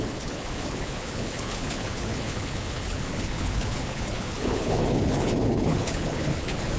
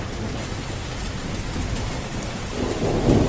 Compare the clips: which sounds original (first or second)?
second